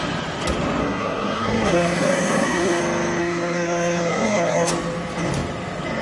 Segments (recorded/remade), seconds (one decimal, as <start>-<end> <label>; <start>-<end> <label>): 0.0-0.8 recorded; 0.8-2.8 remade; 2.8-3.2 recorded; 3.2-4.7 remade; 4.7-6.0 recorded

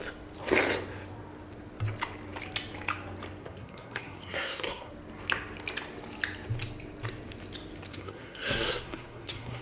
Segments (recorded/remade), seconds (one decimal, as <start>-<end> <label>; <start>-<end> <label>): 0.0-3.4 recorded; 3.4-4.9 remade; 4.9-7.9 recorded; 7.9-9.6 remade

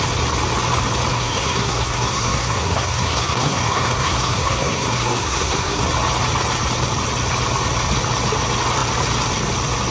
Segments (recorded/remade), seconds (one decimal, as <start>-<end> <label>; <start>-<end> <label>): 0.0-1.1 recorded; 1.1-5.8 remade; 5.8-9.9 recorded

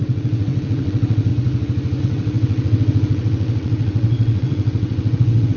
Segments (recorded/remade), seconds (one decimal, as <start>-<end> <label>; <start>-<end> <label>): 0.0-1.3 remade; 1.3-2.0 recorded; 2.0-5.6 remade

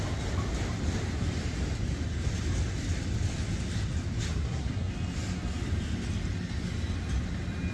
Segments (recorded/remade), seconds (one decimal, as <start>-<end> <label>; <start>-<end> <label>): 0.0-4.3 recorded; 4.3-4.9 remade; 4.9-7.7 recorded

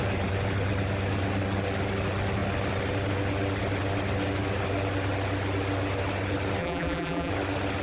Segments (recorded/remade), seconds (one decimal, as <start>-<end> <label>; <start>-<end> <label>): 0.0-6.6 recorded; 6.6-7.3 remade; 7.3-7.8 recorded

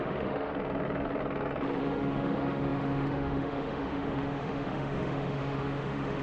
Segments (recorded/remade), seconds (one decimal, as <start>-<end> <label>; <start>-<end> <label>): 0.0-0.5 remade; 0.5-1.8 recorded; 1.8-6.2 remade